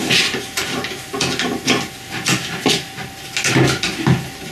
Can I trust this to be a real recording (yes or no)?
yes